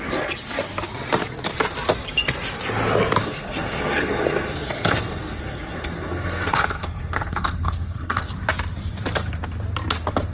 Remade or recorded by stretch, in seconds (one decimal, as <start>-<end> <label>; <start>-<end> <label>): 0.0-3.2 recorded; 3.2-8.3 remade; 8.3-10.3 recorded